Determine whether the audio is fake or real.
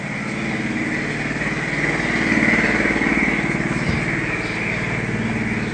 real